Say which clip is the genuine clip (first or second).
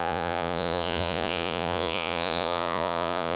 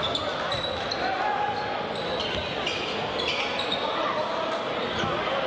second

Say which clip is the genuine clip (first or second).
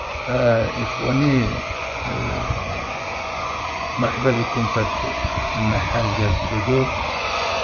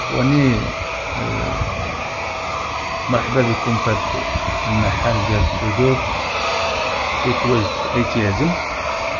second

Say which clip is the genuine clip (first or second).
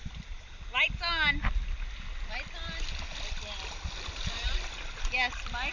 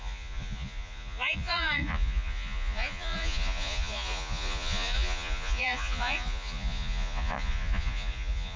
first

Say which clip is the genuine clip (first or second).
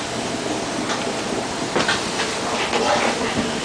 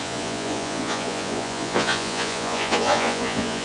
first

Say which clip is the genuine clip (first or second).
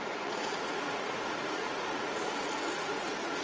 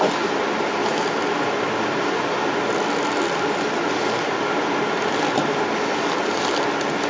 second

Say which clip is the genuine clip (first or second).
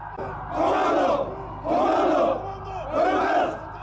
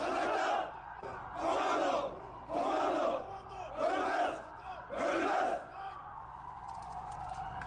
first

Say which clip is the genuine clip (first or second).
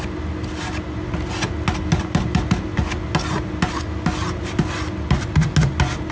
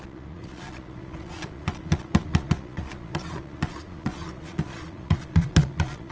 first